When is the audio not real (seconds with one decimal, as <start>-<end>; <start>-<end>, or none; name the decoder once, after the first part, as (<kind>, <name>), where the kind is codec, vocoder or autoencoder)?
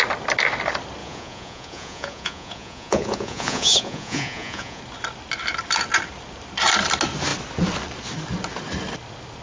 1.0-4.8 (vocoder, Vocos)